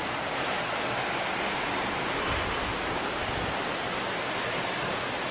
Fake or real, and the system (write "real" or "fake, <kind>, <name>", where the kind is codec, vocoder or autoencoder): real